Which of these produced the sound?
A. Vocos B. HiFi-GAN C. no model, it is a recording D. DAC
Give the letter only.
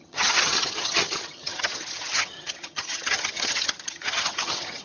B